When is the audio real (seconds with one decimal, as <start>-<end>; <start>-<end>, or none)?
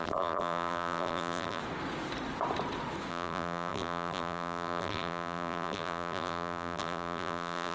1.6-3.1